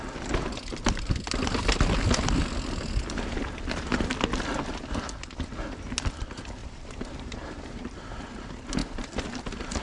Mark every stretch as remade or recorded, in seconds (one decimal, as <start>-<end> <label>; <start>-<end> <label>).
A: 0.0-6.6 recorded; 6.6-8.2 remade; 8.2-9.8 recorded